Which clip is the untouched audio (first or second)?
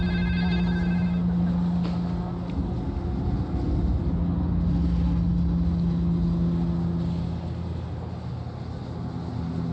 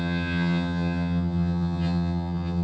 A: first